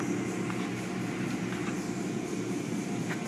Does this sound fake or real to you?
real